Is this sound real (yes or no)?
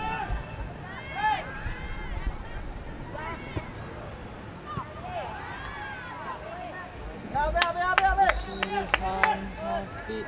yes